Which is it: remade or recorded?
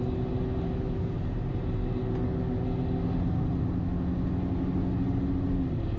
recorded